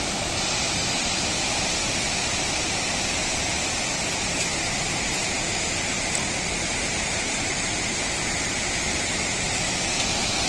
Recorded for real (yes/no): yes